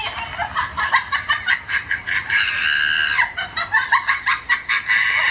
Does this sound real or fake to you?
fake